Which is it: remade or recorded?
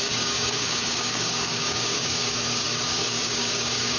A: remade